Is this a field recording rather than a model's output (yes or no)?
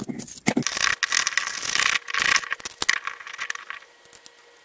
yes